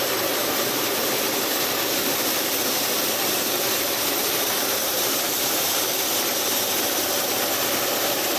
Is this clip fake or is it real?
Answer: fake